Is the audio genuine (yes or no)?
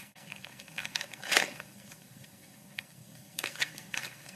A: no